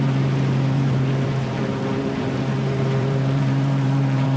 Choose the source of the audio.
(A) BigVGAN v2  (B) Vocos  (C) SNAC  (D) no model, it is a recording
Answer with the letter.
A